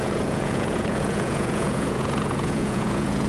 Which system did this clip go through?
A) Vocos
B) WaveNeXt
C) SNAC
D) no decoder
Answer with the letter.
A